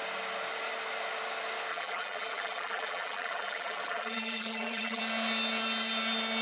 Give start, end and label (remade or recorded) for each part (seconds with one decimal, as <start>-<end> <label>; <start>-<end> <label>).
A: 0.0-1.7 recorded; 1.7-5.0 remade; 5.0-6.4 recorded